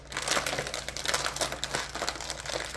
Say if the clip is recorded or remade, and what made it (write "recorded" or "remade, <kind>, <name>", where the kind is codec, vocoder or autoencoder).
recorded